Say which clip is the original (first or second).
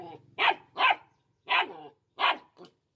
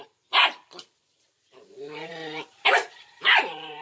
first